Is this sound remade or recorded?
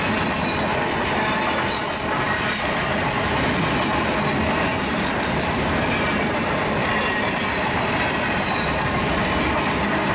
recorded